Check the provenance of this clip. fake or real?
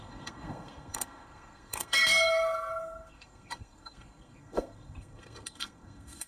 fake